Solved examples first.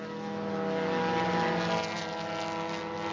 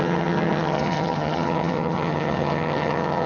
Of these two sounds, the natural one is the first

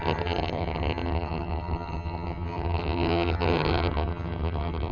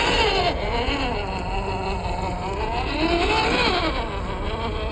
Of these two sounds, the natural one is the second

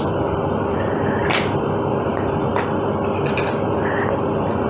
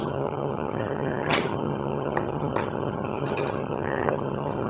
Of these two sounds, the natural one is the first